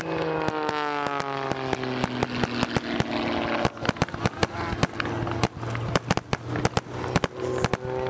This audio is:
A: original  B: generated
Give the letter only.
A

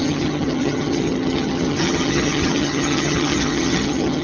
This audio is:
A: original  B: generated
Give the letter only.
B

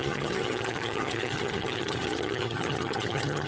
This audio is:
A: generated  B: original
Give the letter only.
A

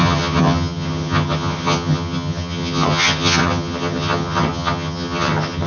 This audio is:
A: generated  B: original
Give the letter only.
A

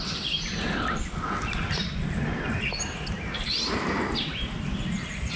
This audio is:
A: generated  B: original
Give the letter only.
B